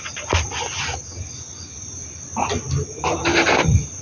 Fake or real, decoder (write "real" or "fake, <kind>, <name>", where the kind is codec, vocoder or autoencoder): real